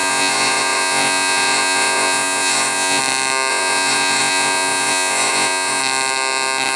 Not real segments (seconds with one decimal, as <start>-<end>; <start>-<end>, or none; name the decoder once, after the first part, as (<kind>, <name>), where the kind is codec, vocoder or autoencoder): 0.0-3.0 (vocoder, Vocos); 3.5-5.8